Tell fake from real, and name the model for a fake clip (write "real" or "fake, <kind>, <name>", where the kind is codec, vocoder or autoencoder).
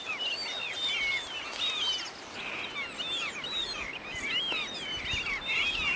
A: real